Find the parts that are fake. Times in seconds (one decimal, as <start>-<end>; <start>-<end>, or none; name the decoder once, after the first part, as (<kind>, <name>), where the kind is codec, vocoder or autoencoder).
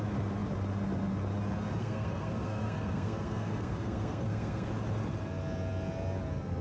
1.8-4.7 (codec, SNAC)